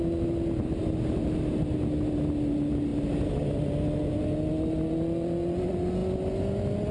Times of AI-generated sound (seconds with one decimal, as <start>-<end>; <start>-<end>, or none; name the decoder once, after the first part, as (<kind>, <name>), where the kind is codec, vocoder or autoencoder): none